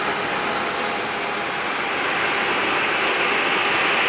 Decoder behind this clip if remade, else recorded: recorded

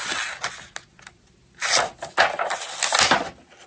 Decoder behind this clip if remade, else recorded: recorded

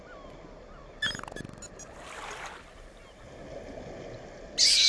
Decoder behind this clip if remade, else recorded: recorded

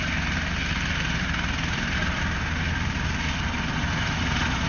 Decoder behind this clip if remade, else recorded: recorded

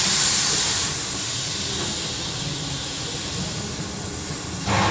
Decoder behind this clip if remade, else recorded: recorded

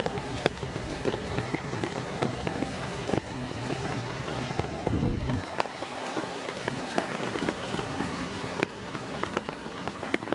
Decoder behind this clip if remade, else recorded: remade, codec, SNAC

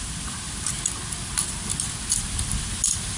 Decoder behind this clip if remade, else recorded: recorded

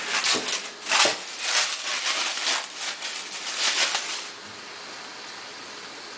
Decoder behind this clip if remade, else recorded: recorded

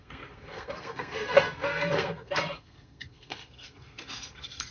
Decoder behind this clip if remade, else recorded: remade, codec, SNAC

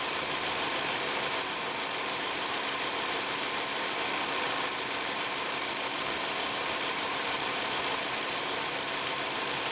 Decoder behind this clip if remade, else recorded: remade, vocoder, BigVGAN v2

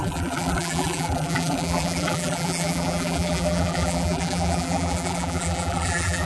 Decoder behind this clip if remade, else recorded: remade, vocoder, BigVGAN v2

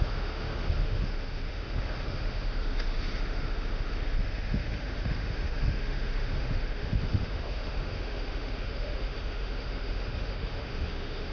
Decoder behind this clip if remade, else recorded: remade, autoencoder, DAC-VAE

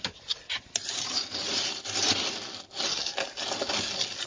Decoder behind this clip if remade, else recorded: recorded